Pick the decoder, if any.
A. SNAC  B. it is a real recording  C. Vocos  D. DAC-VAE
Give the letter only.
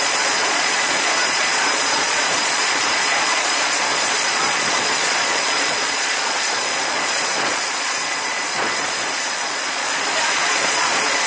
C